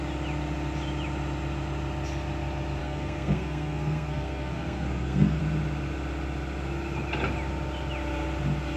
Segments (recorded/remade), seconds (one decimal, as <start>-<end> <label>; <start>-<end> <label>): 0.0-2.8 recorded; 2.8-5.4 remade; 5.4-8.8 recorded